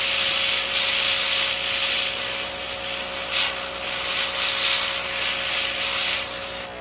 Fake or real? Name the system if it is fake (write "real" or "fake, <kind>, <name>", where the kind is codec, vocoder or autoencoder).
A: real